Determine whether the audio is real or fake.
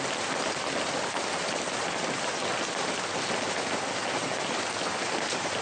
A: real